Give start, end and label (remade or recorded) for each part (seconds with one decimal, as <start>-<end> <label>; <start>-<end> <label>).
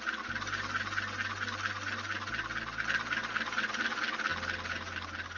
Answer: 0.0-5.4 recorded